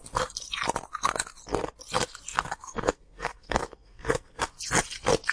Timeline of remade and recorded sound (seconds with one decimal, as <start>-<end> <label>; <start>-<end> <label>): 0.0-2.3 recorded; 2.3-4.4 remade; 4.4-5.3 recorded